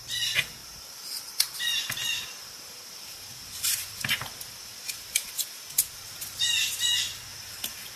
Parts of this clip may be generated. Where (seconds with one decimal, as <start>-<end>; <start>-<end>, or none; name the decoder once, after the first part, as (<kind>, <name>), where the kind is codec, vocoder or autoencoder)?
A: 0.6-5.3 (vocoder, BigVGAN v2); 7.3-8.0